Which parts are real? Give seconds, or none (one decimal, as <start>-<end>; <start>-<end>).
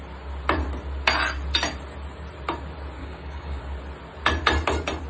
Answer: 0.0-3.0; 3.6-5.1